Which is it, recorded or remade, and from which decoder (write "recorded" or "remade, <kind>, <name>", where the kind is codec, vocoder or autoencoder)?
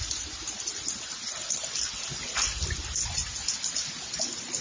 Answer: recorded